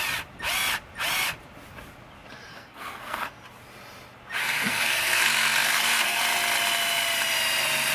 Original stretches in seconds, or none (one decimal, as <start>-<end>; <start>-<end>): 0.0-2.5; 3.3-4.4; 6.2-7.9

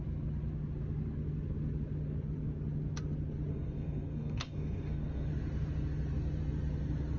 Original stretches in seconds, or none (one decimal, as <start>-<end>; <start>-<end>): 0.0-3.5; 5.3-7.2

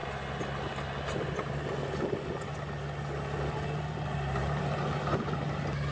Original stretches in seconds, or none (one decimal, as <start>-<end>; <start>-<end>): 0.0-5.9

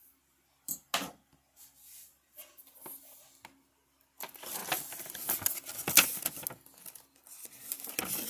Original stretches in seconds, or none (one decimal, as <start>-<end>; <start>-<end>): 0.0-8.3

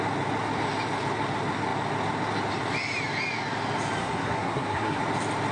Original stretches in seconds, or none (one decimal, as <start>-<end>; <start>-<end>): 0.0-4.0; 5.0-5.5

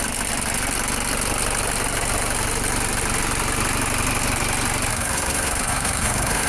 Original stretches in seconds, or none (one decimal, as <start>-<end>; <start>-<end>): 0.0-4.9

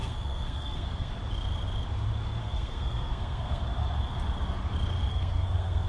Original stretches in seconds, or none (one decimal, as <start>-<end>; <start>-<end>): 1.1-2.4; 3.6-5.1